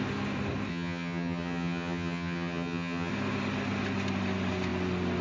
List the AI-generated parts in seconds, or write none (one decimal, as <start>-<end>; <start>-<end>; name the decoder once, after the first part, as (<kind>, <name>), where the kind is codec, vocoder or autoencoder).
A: 0.7-3.1 (vocoder, HiFi-GAN)